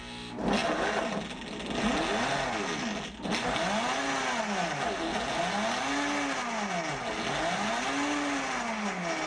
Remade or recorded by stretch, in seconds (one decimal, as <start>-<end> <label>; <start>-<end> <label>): 0.0-9.3 recorded